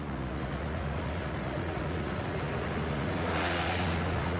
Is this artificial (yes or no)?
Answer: yes